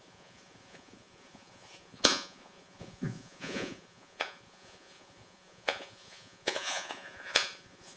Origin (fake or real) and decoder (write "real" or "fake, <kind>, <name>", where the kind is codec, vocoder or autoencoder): fake, vocoder, Vocos